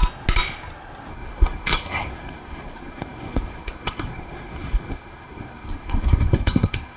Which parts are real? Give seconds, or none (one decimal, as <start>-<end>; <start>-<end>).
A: 0.0-1.1